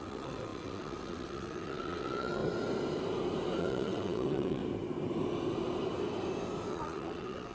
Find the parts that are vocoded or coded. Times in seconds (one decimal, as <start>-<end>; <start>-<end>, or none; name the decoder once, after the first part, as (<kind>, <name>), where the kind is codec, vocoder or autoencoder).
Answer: 0.0-2.4 (vocoder, WaveNeXt); 3.6-4.6; 6.7-7.5